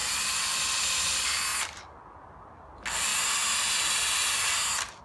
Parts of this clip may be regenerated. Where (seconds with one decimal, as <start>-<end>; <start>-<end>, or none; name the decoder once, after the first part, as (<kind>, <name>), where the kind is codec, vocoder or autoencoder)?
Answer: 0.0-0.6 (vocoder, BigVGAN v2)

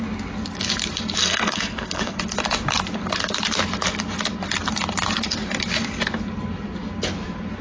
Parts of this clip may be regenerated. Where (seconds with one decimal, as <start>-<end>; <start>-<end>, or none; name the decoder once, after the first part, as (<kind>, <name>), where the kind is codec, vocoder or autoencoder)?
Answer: 1.2-2.2 (codec, SNAC)

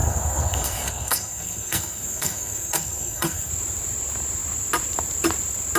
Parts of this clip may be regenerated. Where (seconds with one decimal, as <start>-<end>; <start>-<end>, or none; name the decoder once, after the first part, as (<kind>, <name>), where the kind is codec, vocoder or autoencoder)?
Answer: 0.0-3.5 (codec, SNAC)

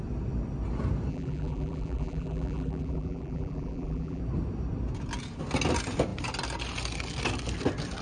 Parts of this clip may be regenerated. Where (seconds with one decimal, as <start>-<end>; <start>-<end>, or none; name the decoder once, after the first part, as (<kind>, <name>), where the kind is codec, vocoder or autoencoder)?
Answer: 1.1-4.2 (vocoder, BigVGAN v2)

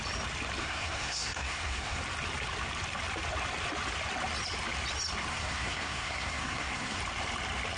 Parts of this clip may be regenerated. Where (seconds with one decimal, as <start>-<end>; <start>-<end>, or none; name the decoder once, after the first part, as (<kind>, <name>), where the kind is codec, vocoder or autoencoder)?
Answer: 0.6-2.0 (codec, SNAC); 5.3-7.0

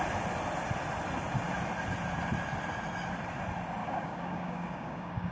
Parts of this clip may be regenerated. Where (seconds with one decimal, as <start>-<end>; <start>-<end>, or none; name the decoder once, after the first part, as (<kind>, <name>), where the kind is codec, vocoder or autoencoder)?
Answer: 3.8-5.3 (codec, DAC)

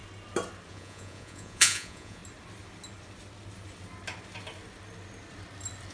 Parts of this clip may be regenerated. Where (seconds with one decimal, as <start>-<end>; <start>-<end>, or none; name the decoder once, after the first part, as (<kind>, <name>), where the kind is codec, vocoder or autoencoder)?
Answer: 0.7-2.2 (vocoder, Vocos)